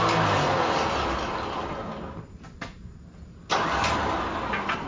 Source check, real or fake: real